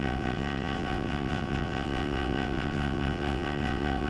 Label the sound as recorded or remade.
remade